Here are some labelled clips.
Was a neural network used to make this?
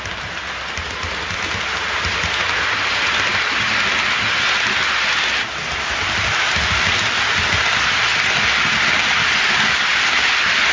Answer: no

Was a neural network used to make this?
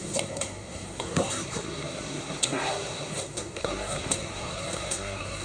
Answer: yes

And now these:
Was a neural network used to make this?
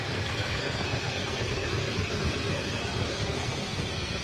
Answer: yes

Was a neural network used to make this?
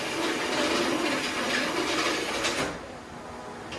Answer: no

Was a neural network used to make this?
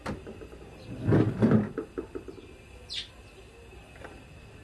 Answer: no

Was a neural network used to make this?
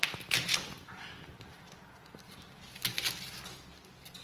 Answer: no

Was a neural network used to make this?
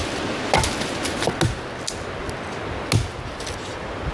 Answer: no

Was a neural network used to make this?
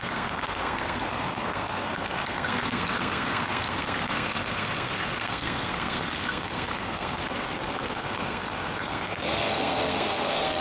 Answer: yes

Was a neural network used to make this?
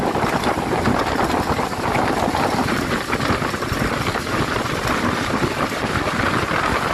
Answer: no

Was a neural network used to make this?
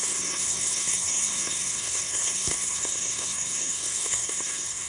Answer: yes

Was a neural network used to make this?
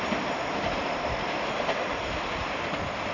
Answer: no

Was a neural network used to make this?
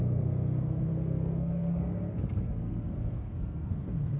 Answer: yes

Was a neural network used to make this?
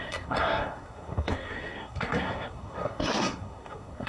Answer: yes